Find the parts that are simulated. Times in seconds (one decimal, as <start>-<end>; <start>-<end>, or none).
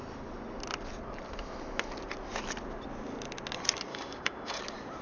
3.9-4.6